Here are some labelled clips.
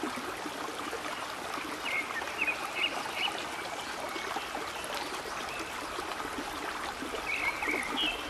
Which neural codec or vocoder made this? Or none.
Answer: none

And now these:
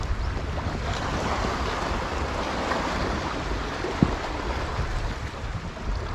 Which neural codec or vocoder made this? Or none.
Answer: none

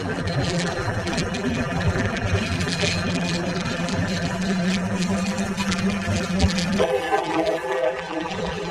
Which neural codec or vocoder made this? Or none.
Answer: vocoder, BigVGAN v2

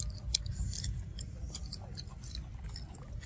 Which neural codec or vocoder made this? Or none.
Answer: none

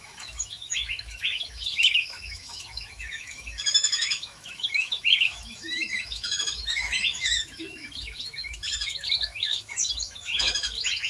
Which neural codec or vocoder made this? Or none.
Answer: autoencoder, DAC-VAE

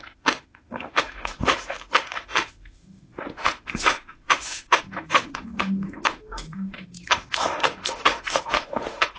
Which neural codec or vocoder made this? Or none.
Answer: autoencoder, DAC-VAE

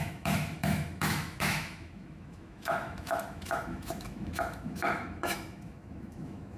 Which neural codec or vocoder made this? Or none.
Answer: autoencoder, DAC-VAE